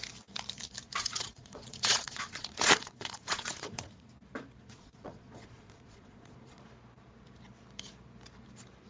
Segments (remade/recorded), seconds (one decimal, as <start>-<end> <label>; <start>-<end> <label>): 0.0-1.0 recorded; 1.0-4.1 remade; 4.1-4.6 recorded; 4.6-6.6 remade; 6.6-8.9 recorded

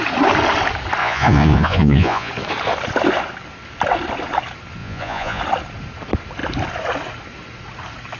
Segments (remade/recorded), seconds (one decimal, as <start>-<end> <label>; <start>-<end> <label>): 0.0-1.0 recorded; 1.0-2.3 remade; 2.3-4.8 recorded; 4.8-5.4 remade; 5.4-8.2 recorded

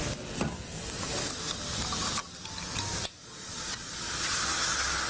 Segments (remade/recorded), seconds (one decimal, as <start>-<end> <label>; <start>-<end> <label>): 0.0-3.2 recorded; 3.2-4.4 remade; 4.4-5.1 recorded

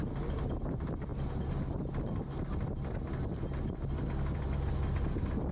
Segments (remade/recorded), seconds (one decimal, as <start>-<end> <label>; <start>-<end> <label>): 0.0-5.5 recorded

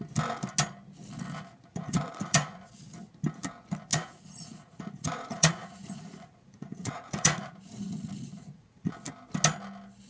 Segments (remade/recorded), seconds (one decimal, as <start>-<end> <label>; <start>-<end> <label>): 0.0-1.7 recorded; 1.7-2.7 remade; 2.7-3.9 recorded; 3.9-8.9 remade; 8.9-10.1 recorded

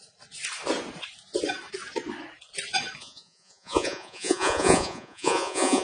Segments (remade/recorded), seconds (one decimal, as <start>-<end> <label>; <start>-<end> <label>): 0.0-3.0 recorded; 3.0-5.8 remade

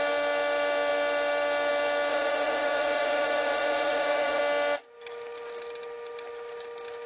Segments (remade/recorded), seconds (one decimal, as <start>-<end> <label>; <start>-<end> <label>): 0.0-2.1 recorded; 2.1-4.4 remade; 4.4-7.1 recorded